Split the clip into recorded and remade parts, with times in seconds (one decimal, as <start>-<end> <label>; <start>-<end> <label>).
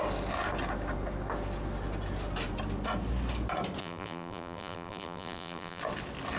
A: 0.0-3.8 recorded; 3.8-5.8 remade; 5.8-6.4 recorded